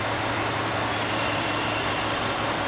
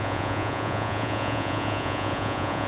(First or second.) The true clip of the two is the first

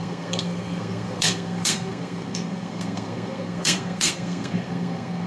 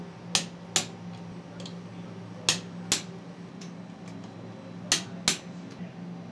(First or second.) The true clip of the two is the second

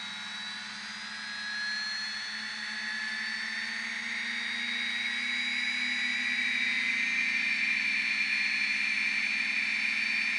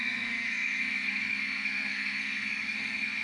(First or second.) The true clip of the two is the first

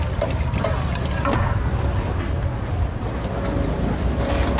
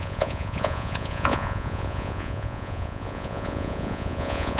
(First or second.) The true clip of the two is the first